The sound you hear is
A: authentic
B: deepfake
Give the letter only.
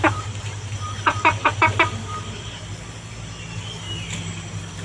A